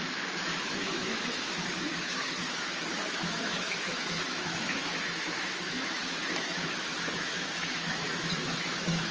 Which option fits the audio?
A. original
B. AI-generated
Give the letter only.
B